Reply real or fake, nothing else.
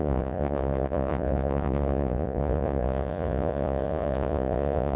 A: fake